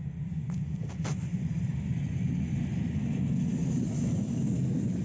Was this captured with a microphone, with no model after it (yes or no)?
yes